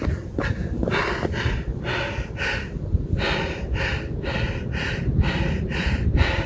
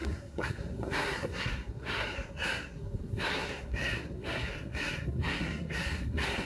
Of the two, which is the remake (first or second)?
second